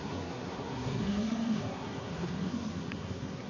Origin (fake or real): fake